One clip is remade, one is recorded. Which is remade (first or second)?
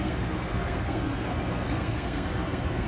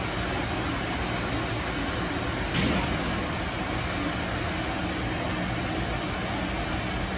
first